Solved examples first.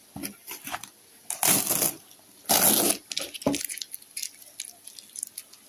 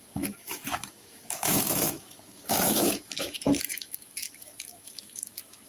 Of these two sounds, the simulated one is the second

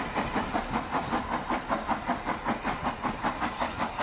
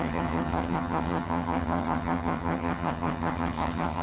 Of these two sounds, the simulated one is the second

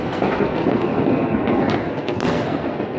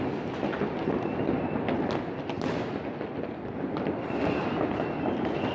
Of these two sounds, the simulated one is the first